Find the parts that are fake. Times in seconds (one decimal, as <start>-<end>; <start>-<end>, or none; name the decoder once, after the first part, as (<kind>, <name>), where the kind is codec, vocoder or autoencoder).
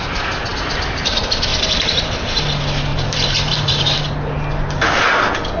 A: 1.5-2.0 (vocoder, BigVGAN v2); 2.9-4.0